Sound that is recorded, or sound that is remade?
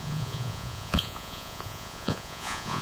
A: remade